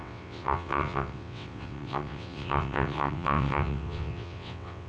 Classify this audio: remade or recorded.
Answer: remade